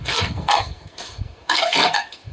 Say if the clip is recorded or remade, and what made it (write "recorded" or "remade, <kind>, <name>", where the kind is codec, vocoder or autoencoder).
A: remade, codec, SNAC